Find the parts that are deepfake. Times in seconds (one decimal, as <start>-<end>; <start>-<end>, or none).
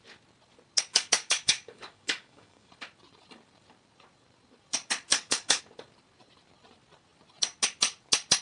0.9-2.7; 5.1-5.6